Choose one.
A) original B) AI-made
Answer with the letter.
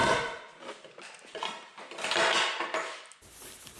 A